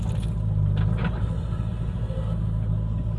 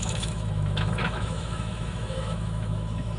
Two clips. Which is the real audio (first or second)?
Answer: first